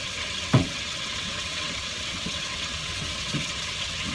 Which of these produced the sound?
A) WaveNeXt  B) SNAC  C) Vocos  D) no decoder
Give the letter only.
A